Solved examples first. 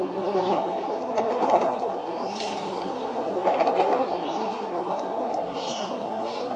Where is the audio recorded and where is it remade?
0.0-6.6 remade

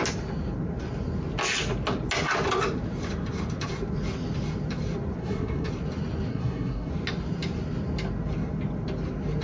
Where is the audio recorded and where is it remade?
0.0-5.2 recorded; 5.2-5.7 remade; 5.7-6.3 recorded; 6.3-6.9 remade; 6.9-9.4 recorded

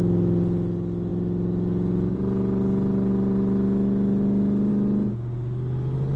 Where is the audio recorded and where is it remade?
0.0-6.2 recorded

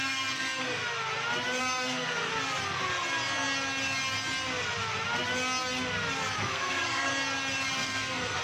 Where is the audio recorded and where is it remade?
0.0-0.8 remade; 0.8-1.6 recorded; 1.6-2.3 remade; 2.3-6.4 recorded; 6.4-7.1 remade; 7.1-7.7 recorded; 7.7-8.4 remade

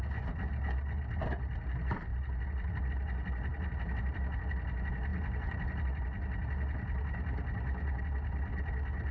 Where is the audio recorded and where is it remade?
0.0-9.1 recorded

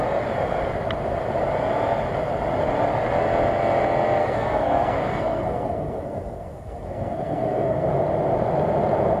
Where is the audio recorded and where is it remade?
0.0-4.2 recorded; 4.2-7.9 remade; 7.9-9.2 recorded